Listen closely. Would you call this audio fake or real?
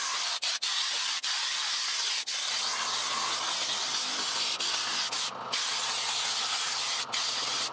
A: real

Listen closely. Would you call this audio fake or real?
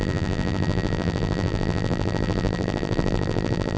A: fake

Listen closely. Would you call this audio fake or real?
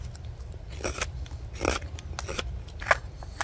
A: real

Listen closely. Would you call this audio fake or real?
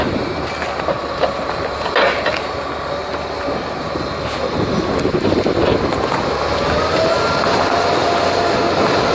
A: real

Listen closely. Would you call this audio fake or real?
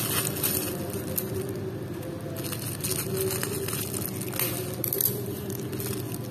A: real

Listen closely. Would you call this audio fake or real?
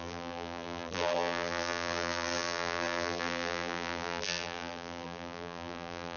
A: fake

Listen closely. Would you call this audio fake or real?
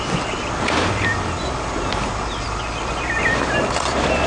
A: real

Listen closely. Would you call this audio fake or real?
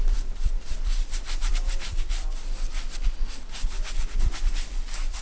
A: fake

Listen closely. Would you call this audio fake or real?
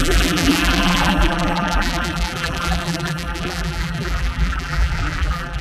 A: fake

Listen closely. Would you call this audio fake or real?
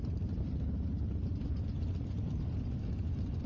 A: fake